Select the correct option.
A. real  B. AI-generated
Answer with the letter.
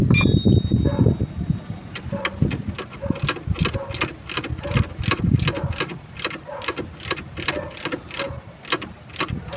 A